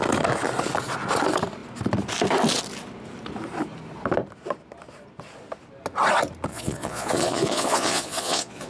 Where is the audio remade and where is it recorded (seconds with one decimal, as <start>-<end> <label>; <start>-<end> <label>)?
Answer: 0.0-6.5 recorded; 6.5-8.7 remade